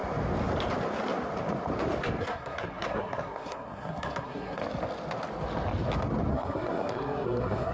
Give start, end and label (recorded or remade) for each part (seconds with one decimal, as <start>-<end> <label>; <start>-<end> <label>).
0.0-2.2 recorded; 2.2-4.6 remade; 4.6-6.3 recorded; 6.3-7.7 remade